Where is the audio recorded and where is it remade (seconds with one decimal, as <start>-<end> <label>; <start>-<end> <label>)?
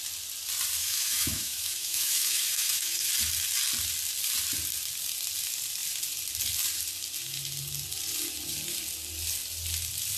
0.0-0.8 recorded; 0.8-3.1 remade; 3.1-10.2 recorded